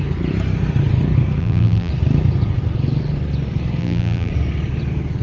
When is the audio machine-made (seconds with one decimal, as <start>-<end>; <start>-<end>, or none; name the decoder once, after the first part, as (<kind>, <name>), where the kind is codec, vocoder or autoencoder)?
1.4-1.9 (vocoder, BigVGAN v2); 3.8-4.3